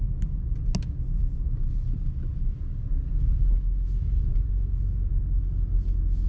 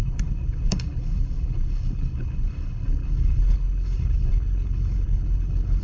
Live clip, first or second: first